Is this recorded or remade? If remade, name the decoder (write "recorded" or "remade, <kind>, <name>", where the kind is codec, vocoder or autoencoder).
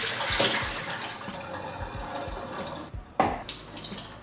recorded